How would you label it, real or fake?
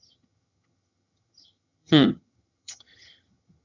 fake